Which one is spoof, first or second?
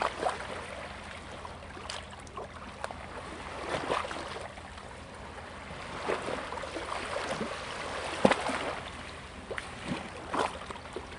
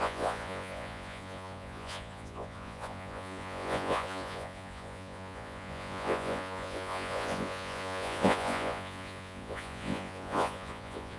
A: second